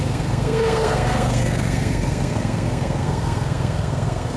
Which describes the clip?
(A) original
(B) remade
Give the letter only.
B